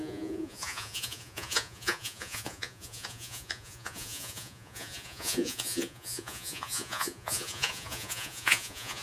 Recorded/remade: remade